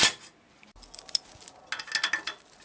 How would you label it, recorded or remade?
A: recorded